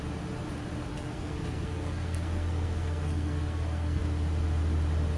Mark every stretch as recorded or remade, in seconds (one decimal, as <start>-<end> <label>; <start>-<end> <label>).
0.0-0.9 recorded; 0.9-4.0 remade; 4.0-5.2 recorded